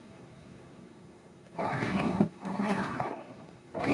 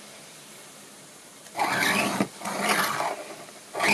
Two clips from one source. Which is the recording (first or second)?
second